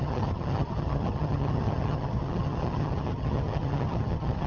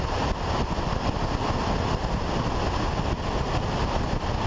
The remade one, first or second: first